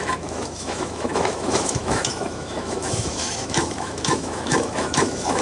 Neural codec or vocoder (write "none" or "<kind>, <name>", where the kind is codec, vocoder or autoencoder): autoencoder, DAC-VAE